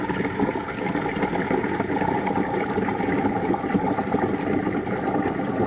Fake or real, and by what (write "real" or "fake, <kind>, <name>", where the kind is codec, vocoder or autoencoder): fake, vocoder, BigVGAN v2